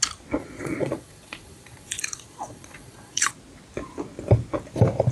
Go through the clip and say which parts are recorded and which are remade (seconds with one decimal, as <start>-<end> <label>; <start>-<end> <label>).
0.0-0.4 recorded; 0.4-3.3 remade; 3.3-5.1 recorded